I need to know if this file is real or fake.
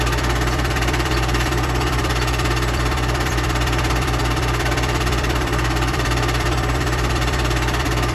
fake